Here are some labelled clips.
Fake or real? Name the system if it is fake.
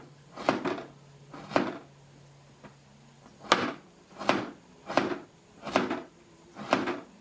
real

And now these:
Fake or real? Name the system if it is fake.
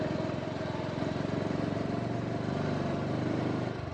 fake, vocoder, BigVGAN v2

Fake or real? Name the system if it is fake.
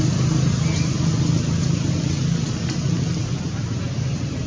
real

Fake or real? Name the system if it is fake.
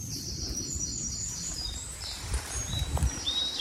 fake, vocoder, BigVGAN v2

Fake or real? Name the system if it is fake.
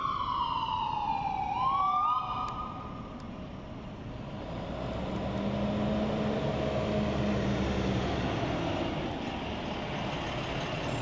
real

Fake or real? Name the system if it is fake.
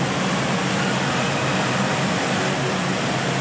real